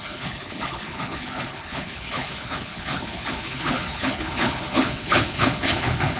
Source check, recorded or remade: remade